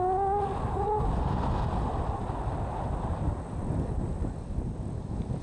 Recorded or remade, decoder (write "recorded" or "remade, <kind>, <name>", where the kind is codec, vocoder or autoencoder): recorded